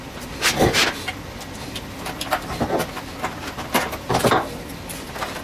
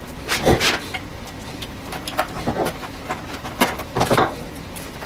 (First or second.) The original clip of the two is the first